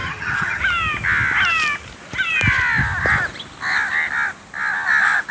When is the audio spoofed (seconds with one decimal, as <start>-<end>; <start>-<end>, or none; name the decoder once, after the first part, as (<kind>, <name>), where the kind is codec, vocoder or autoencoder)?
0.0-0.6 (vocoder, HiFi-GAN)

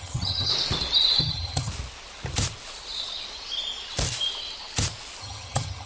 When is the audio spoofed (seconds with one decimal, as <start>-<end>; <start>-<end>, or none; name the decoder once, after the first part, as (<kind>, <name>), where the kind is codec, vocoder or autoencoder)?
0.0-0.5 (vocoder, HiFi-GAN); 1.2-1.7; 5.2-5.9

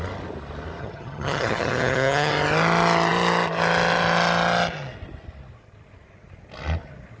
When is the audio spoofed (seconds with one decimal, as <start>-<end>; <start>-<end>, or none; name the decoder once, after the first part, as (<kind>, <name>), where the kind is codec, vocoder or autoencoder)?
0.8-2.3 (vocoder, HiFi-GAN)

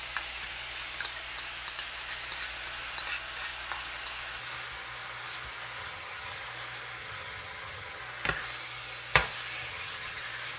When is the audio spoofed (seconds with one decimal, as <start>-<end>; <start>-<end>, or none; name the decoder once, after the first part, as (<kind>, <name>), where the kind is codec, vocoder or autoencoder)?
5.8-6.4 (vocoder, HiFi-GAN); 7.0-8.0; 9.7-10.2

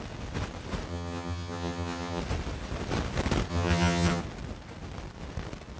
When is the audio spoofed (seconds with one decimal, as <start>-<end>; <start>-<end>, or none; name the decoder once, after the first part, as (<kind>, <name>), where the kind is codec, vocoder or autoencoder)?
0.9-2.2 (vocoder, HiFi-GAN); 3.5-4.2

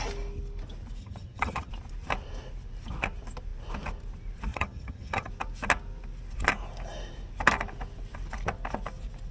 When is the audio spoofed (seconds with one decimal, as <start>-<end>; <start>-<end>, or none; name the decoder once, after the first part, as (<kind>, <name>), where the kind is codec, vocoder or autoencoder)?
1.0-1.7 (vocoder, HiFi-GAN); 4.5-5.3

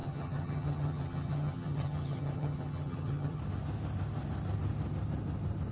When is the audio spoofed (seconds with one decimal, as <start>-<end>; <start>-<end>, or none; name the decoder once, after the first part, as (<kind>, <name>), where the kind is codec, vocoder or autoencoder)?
0.0-3.4 (vocoder, HiFi-GAN)

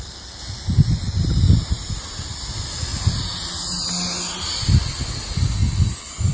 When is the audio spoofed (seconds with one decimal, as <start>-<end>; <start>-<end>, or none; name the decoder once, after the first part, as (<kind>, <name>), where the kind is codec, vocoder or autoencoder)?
none